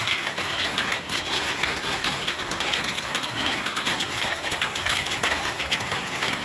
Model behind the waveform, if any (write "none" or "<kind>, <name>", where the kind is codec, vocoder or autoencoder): codec, SNAC